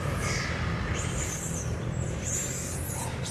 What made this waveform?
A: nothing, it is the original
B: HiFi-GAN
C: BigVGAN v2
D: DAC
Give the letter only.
C